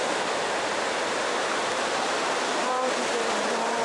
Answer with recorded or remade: remade